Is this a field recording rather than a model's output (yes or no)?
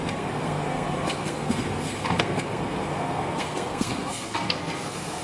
no